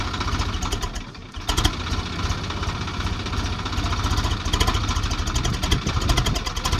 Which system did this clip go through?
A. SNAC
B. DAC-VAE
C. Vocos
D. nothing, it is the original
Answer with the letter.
D